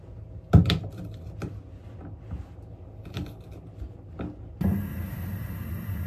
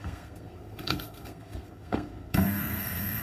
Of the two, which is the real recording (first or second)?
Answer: first